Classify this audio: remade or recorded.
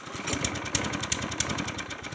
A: recorded